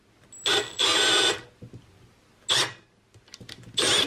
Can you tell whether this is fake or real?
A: real